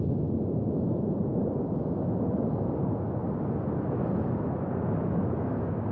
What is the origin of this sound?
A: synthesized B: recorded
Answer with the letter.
B